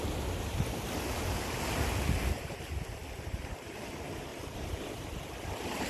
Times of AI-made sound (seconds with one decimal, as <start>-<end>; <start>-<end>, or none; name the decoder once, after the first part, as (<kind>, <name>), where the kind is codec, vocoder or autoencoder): 3.0-3.9 (vocoder, BigVGAN v2); 4.3-5.9

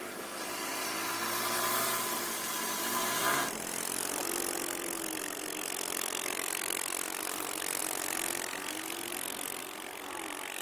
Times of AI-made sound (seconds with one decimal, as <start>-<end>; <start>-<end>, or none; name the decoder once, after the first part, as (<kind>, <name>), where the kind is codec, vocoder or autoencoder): 0.0-0.7 (vocoder, BigVGAN v2); 2.6-4.2; 7.2-7.8; 9.6-10.6

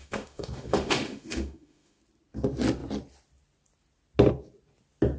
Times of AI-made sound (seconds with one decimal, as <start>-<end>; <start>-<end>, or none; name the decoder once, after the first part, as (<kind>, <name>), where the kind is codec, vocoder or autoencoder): 0.0-2.0 (autoencoder, DAC-VAE)

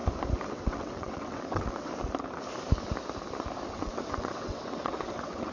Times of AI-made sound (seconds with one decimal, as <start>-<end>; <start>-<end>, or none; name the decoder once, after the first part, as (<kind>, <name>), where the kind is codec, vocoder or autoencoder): 0.5-1.9 (vocoder, WaveNeXt); 3.7-5.5

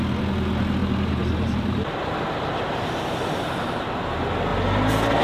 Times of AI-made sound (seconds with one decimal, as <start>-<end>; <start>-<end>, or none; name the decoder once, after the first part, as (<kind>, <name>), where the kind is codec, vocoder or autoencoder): 0.8-3.9 (vocoder, BigVGAN v2)